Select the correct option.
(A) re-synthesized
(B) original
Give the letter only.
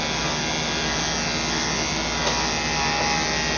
B